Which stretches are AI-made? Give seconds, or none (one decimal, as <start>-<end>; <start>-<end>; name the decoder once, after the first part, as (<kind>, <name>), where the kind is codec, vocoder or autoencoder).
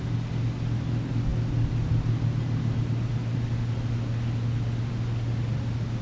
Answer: none